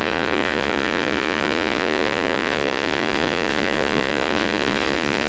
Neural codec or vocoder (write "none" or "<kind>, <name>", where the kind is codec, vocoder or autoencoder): vocoder, Vocos